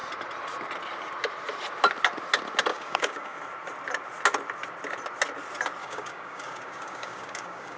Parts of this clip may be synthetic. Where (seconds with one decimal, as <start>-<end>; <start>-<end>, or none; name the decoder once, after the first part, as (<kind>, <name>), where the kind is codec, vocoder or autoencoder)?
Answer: 2.7-3.4 (codec, DAC); 5.8-7.8